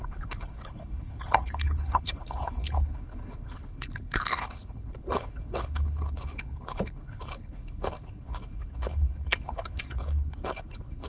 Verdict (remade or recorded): remade